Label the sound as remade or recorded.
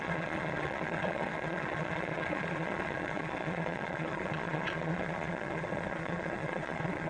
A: remade